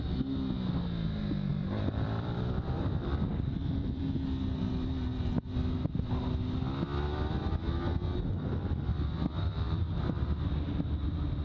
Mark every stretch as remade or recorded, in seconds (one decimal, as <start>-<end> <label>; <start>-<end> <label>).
0.0-1.5 recorded; 1.5-4.0 remade; 4.0-11.4 recorded